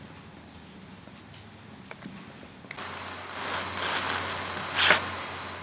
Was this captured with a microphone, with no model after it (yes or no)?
yes